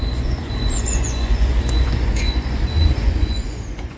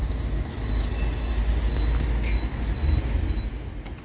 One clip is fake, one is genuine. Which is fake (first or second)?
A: first